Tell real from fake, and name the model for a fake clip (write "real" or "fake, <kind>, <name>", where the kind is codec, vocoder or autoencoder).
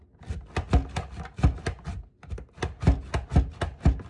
real